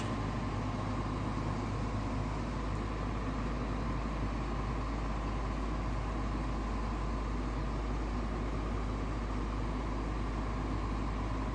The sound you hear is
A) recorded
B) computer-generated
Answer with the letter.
A